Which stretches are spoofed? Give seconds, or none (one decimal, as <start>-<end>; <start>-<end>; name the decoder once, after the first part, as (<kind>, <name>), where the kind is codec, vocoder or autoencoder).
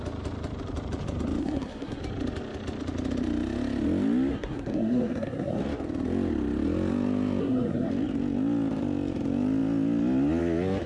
1.4-2.0 (codec, SNAC); 4.3-5.6; 7.4-7.9